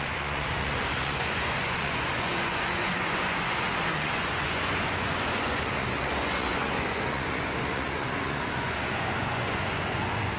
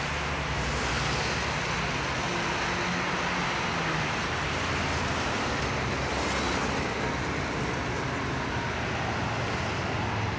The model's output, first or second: first